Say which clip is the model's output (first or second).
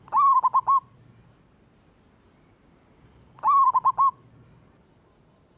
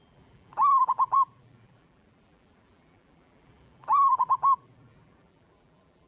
second